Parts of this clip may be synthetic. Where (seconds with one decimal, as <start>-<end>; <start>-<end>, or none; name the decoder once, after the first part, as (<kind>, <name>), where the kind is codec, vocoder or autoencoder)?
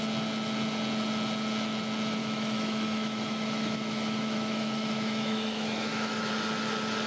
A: 2.2-6.3 (autoencoder, DAC-VAE)